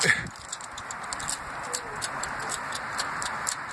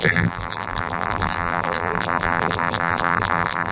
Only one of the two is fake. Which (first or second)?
second